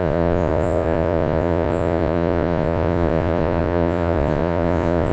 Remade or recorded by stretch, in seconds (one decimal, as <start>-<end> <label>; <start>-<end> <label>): 0.0-5.1 remade